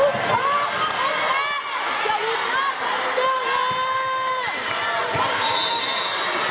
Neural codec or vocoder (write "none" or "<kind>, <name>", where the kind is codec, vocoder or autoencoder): none